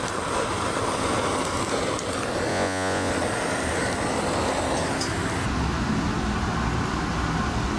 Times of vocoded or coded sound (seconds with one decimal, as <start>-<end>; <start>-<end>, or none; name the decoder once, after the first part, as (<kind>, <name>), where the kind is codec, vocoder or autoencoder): 2.5-3.1 (vocoder, Vocos)